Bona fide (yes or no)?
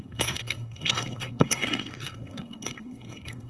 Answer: no